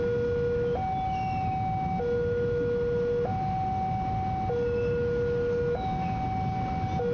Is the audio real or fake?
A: real